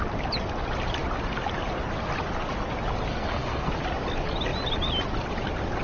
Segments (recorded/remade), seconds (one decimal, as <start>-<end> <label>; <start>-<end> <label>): 0.0-3.1 recorded; 3.1-3.7 remade; 3.7-5.8 recorded